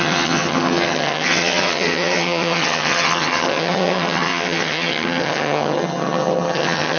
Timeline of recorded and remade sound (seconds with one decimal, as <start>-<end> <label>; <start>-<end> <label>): 0.0-7.0 remade